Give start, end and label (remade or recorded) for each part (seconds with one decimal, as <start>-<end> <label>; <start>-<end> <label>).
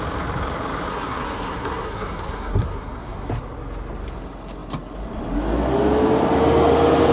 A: 0.0-0.9 recorded; 0.9-3.3 remade; 3.3-7.1 recorded